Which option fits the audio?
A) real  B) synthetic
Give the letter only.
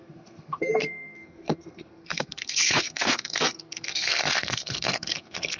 B